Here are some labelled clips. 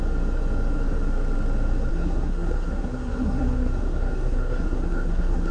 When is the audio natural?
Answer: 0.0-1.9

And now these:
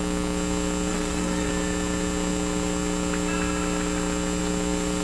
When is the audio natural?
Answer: 0.0-0.9; 1.5-5.0

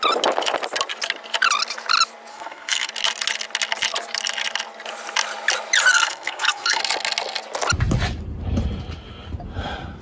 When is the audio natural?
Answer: 0.0-2.3; 2.9-5.9; 6.8-10.0

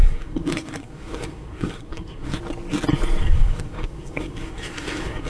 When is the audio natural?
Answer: 2.4-3.2